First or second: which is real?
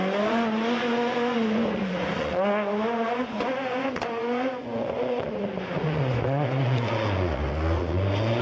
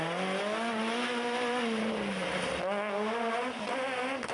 second